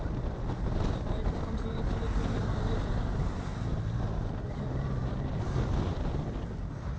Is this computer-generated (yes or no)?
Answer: no